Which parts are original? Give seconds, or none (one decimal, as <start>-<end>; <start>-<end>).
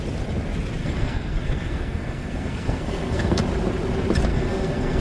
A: 0.0-0.8; 3.4-4.3